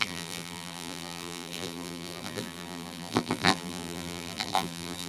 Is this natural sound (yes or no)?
no